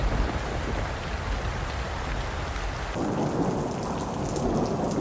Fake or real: real